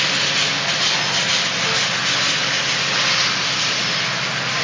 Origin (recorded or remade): recorded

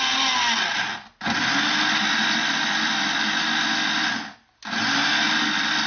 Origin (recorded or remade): recorded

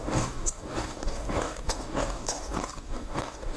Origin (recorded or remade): remade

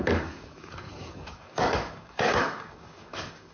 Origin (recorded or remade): remade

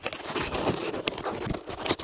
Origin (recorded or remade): recorded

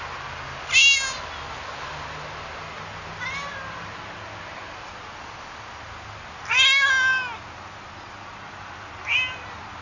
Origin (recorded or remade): recorded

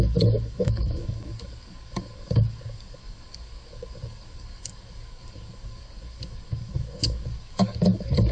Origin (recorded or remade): remade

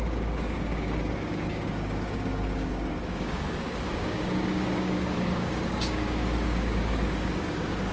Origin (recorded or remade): remade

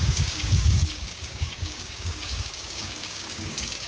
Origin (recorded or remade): remade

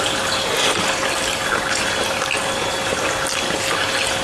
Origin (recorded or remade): recorded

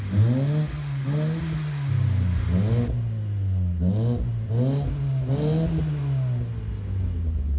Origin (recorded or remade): recorded